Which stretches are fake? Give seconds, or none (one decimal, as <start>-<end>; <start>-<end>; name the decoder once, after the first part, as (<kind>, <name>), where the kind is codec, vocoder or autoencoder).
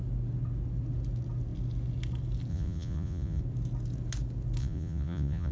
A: 2.5-3.4 (vocoder, Vocos); 4.6-5.5